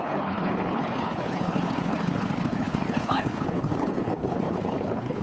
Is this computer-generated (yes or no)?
yes